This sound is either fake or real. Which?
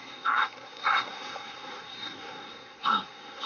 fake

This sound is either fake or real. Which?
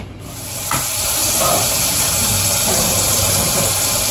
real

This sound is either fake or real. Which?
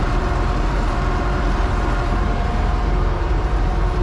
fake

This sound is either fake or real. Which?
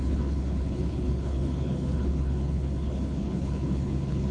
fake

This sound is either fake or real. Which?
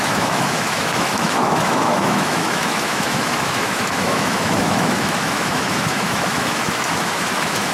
fake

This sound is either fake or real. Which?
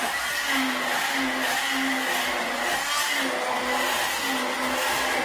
real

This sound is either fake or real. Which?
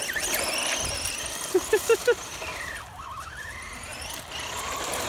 real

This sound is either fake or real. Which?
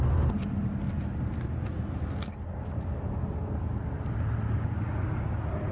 real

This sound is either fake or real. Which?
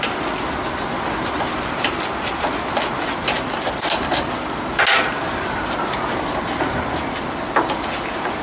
real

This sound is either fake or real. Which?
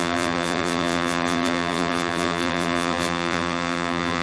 fake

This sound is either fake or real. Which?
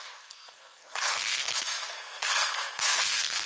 fake